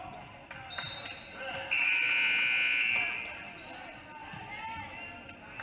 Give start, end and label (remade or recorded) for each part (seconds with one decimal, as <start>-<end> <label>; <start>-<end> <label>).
0.0-5.6 recorded